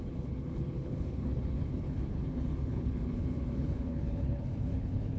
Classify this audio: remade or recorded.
remade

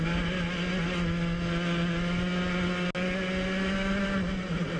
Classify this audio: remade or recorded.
recorded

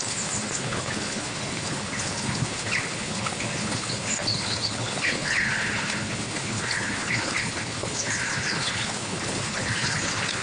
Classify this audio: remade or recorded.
remade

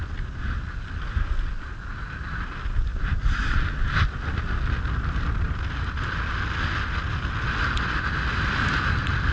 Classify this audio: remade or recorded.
recorded